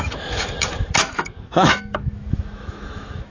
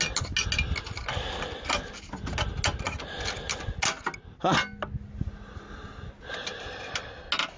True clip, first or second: second